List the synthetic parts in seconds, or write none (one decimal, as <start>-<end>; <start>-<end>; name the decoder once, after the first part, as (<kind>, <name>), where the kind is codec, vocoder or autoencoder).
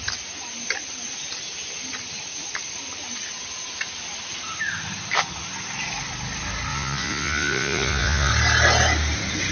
6.7-8.3 (vocoder, Vocos)